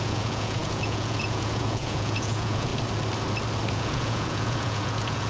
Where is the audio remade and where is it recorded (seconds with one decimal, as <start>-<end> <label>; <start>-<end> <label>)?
0.0-2.7 remade; 2.7-3.7 recorded; 3.7-5.3 remade